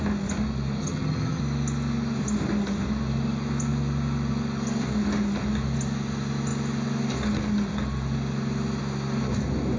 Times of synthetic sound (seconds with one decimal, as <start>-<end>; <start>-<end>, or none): 0.8-1.4